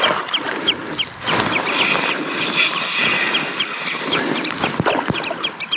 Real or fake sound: fake